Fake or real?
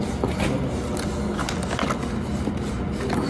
real